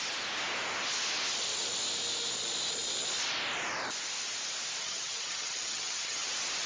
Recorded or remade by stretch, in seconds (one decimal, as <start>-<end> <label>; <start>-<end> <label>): 0.0-4.8 recorded; 4.8-6.3 remade; 6.3-6.7 recorded

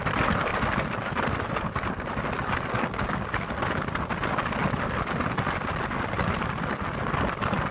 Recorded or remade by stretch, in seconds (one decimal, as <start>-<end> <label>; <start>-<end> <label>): 0.0-7.7 recorded